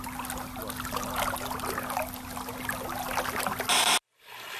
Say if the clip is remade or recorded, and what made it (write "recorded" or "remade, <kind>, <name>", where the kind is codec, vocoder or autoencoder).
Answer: recorded